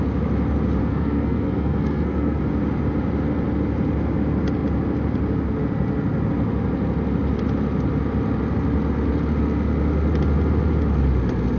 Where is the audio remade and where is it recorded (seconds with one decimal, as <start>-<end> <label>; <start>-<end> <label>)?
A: 0.0-0.8 recorded; 0.8-2.4 remade; 2.4-11.6 recorded